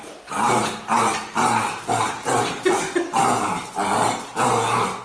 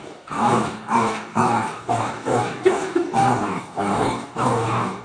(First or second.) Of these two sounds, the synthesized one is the second